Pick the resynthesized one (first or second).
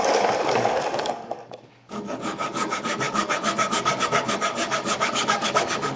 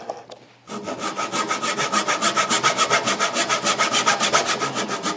first